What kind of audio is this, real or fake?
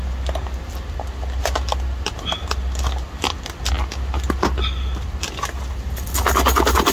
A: real